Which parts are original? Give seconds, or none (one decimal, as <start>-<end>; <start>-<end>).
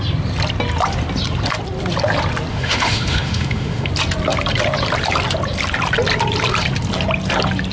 0.0-2.5; 3.9-7.7